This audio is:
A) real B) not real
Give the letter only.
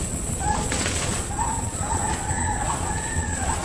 B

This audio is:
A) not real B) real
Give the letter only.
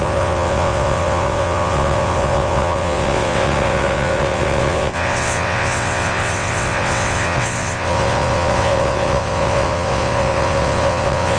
A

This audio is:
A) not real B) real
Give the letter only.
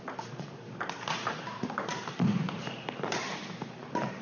A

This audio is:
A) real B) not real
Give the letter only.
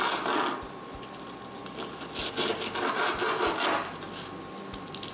A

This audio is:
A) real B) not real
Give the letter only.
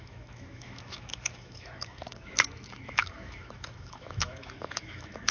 B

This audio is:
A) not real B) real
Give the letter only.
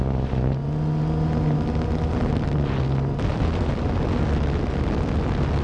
B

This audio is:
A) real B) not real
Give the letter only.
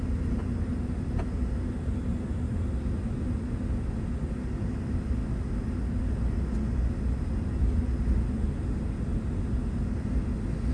A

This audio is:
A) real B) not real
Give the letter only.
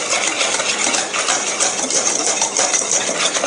A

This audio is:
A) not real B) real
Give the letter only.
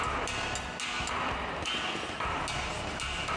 B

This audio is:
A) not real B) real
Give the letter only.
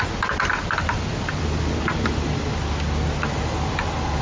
B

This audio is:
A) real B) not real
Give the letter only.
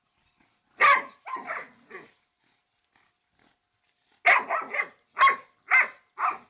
A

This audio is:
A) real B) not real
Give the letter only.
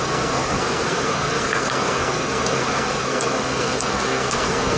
B